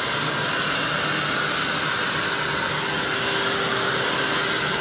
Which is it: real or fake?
real